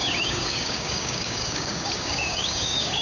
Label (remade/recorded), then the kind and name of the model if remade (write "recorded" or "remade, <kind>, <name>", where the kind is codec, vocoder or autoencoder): remade, codec, DAC